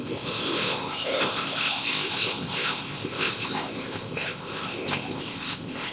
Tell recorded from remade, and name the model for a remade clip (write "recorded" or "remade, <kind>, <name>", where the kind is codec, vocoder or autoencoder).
remade, codec, ZipCodec